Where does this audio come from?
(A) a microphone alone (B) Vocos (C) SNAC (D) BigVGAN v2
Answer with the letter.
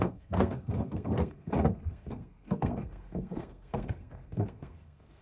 C